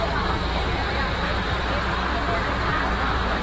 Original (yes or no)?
no